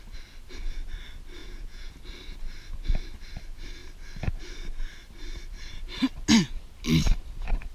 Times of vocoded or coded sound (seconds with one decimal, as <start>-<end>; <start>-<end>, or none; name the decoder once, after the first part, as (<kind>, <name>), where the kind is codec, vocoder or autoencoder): 1.4-1.9 (vocoder, Vocos)